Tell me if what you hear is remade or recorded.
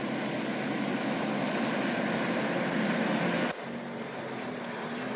recorded